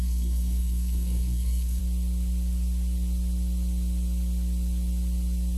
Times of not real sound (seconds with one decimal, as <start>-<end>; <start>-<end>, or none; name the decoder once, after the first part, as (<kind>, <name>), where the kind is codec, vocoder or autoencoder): 0.0-1.8 (codec, SNAC)